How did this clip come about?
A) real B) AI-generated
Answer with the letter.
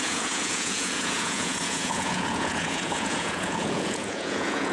B